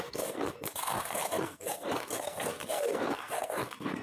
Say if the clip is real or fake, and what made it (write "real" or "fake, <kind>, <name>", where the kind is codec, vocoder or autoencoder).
fake, codec, SNAC